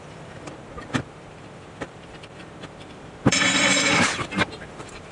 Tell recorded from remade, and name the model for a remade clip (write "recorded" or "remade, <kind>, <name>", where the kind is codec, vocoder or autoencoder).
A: remade, vocoder, BigVGAN v2